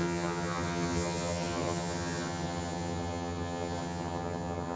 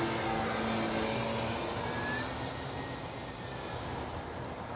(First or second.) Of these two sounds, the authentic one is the second